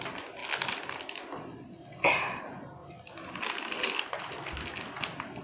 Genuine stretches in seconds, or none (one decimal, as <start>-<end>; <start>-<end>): 0.0-5.4